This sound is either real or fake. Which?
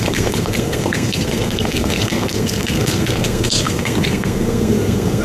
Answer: fake